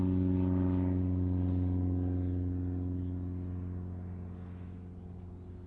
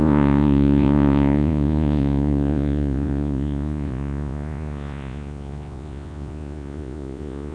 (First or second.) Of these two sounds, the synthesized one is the second